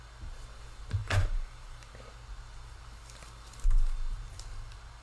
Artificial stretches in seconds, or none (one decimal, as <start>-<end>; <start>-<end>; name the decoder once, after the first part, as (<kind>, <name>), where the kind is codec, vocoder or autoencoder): 1.0-1.9 (vocoder, BigVGAN v2)